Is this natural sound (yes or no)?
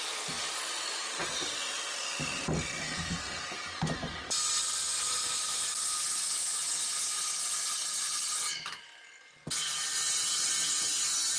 yes